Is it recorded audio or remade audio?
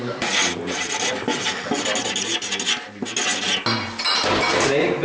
recorded